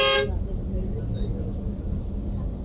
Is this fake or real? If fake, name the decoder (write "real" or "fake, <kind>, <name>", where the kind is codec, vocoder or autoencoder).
real